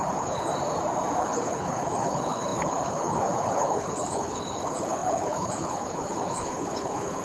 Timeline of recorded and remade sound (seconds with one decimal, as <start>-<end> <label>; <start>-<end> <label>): 0.0-0.5 remade; 0.5-1.2 recorded; 1.2-7.2 remade